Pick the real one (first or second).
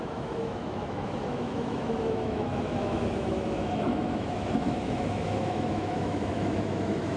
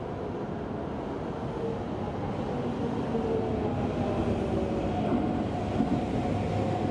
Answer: second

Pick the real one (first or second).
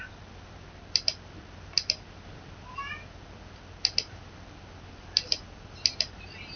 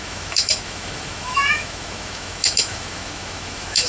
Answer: first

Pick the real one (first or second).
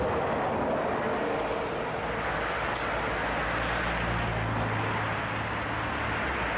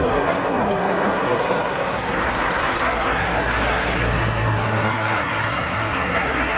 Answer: first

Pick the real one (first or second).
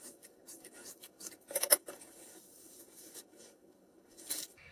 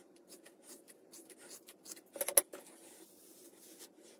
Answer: second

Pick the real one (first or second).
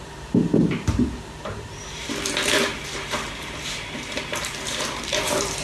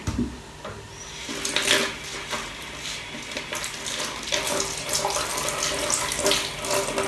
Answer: second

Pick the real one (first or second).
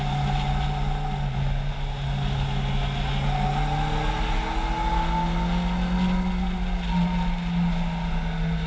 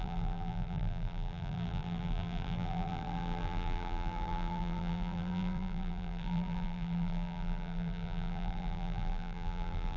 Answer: first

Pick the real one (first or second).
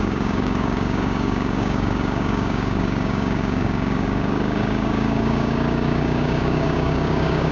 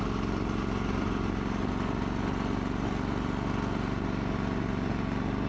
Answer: second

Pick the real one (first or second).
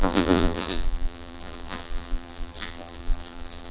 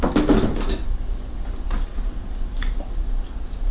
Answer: second